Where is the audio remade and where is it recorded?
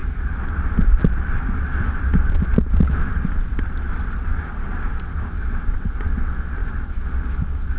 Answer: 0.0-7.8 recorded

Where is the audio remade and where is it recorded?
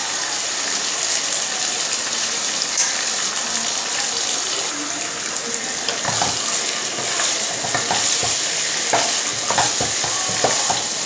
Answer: 0.0-11.1 recorded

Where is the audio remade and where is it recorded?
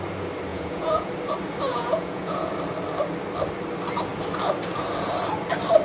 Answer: 0.0-0.5 recorded; 0.5-1.1 remade; 1.1-1.7 recorded; 1.7-2.5 remade; 2.5-5.8 recorded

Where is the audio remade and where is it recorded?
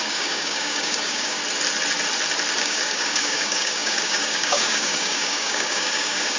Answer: 0.0-1.4 remade; 1.4-2.6 recorded; 2.6-6.4 remade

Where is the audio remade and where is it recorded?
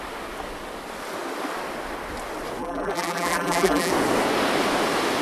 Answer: 0.0-2.6 recorded; 2.6-3.9 remade; 3.9-5.2 recorded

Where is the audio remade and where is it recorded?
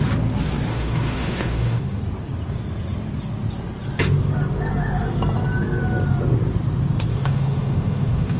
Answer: 0.0-0.7 recorded; 0.7-2.0 remade; 2.0-7.1 recorded; 7.1-8.4 remade